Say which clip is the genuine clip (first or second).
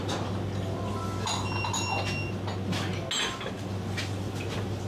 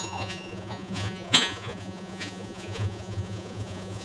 first